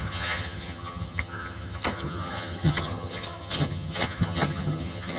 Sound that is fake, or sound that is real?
fake